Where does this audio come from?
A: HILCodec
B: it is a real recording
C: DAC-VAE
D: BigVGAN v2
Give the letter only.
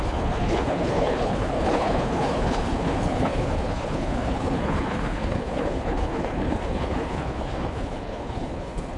A